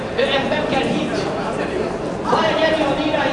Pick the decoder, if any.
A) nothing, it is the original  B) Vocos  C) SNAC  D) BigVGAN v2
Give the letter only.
D